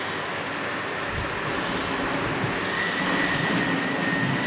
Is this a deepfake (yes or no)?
no